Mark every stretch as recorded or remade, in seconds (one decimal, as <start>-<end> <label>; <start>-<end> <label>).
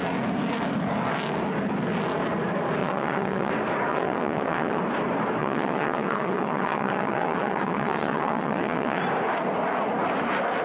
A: 0.0-2.8 recorded; 2.8-3.5 remade; 3.5-3.9 recorded; 3.9-4.8 remade; 4.8-5.4 recorded; 5.4-9.0 remade; 9.0-10.6 recorded